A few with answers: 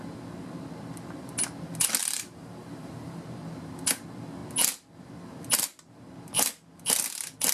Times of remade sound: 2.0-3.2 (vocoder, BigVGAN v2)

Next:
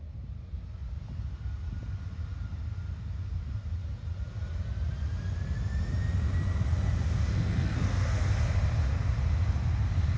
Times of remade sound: 7.2-8.3 (codec, SNAC)

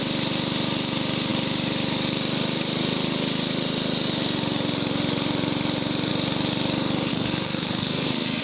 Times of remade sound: 7.1-8.4 (codec, SNAC)

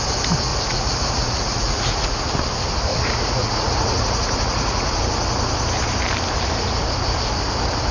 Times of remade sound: 0.5-2.3 (vocoder, Vocos); 2.9-5.0